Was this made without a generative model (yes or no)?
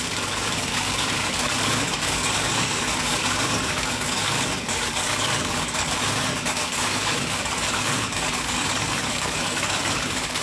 no